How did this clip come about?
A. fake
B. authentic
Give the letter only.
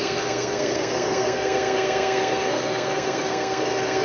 A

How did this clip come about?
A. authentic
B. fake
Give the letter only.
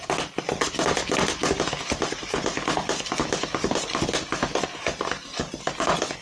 A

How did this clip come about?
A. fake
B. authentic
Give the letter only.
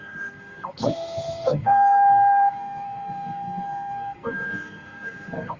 A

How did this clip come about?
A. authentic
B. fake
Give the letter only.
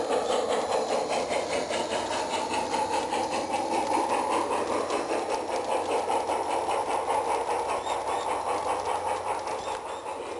A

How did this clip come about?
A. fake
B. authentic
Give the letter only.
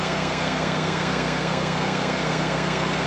A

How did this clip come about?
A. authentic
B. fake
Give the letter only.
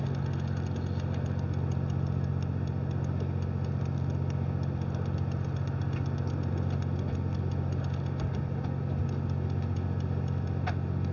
A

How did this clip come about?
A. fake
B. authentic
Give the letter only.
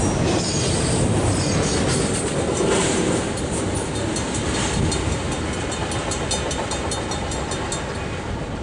B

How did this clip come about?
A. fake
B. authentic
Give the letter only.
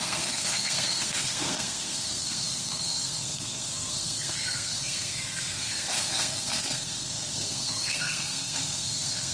A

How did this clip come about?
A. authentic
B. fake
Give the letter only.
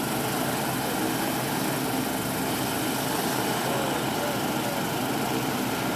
A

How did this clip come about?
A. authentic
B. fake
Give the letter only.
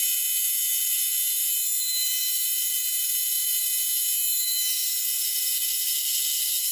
A